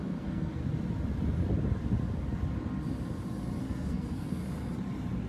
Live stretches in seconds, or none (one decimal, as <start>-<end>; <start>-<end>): 0.6-3.6; 4.4-5.3

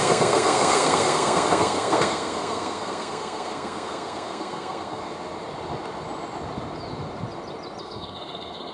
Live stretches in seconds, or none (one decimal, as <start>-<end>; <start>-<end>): 5.0-7.8

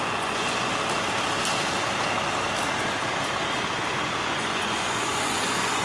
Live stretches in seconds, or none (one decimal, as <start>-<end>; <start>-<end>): 0.7-4.0

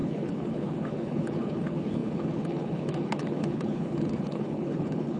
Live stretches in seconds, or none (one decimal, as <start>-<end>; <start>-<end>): none

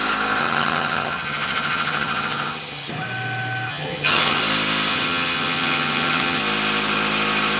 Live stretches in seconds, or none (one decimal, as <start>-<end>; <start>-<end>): 0.0-0.4; 2.9-3.7; 4.4-4.9; 6.4-7.6